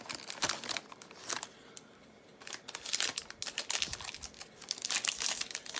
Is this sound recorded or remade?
recorded